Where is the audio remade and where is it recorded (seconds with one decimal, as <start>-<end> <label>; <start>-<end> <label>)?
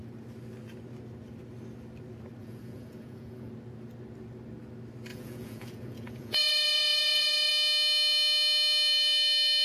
0.0-2.4 recorded; 2.4-3.5 remade; 3.5-5.1 recorded; 5.1-7.5 remade; 7.5-9.6 recorded